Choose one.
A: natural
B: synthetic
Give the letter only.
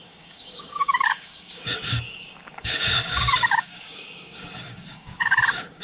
B